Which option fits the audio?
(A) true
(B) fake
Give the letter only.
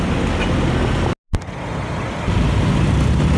A